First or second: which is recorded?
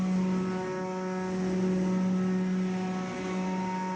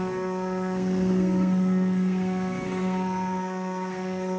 first